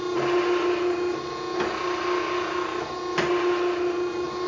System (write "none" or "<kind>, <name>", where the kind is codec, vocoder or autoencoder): none